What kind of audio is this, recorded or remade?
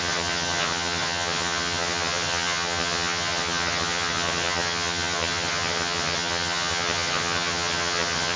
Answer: remade